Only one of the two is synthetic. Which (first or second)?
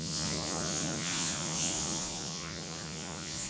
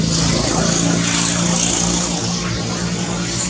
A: first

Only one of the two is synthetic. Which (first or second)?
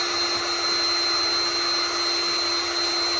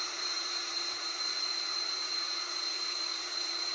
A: second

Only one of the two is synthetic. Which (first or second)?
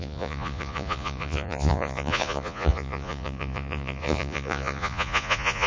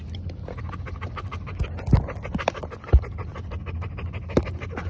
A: first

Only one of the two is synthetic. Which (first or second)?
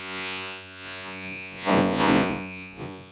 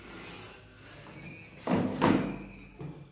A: first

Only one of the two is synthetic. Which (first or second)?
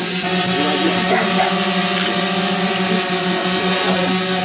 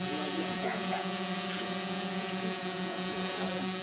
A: second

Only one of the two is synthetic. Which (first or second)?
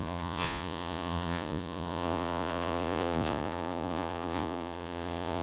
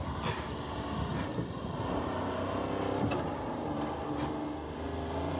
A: first